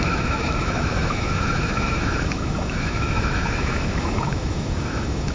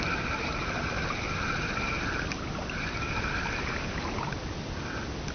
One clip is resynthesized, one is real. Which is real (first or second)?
second